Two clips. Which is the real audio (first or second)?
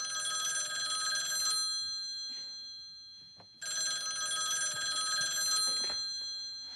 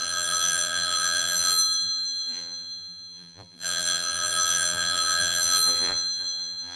first